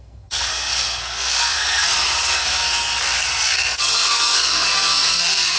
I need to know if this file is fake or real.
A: fake